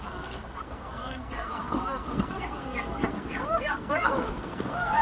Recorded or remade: remade